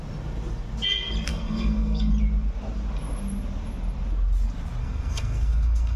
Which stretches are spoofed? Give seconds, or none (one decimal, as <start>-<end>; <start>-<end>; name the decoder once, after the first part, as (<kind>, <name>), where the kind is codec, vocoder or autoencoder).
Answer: 1.3-2.1 (codec, SNAC); 4.8-6.0